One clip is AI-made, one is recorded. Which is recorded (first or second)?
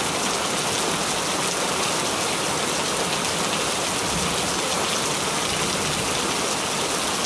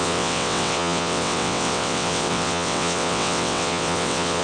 first